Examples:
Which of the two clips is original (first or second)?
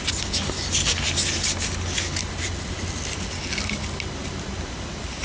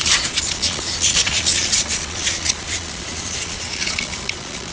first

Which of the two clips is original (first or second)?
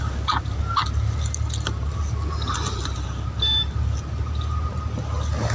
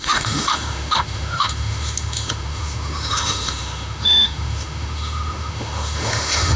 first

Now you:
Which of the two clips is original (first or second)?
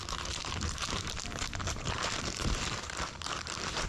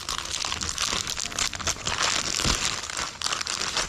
second